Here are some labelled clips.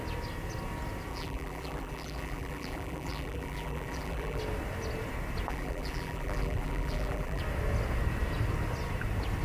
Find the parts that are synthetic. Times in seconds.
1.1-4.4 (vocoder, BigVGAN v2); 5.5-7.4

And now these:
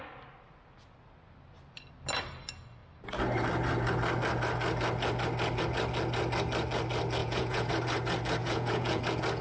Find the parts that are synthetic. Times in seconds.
7.2-7.7 (vocoder, Vocos); 8.4-9.0